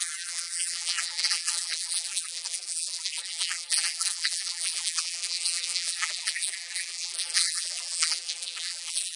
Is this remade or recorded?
remade